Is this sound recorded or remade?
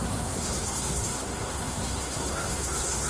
remade